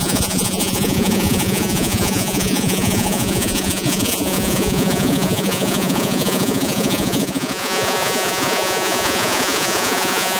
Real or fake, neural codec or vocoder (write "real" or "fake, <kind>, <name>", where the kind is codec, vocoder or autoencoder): fake, vocoder, Vocos